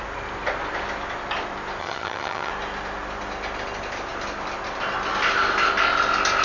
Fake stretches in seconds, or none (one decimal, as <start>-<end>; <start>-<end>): 1.8-2.5